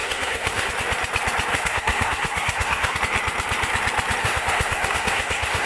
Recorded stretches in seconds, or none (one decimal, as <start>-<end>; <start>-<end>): 0.7-1.5; 3.0-4.2